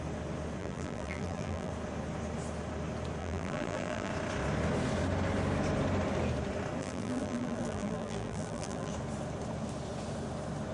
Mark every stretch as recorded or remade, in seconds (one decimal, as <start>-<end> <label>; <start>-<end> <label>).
0.0-0.6 recorded; 0.6-1.7 remade; 1.7-3.2 recorded; 3.2-4.1 remade; 4.1-6.8 recorded; 6.8-8.9 remade; 8.9-10.7 recorded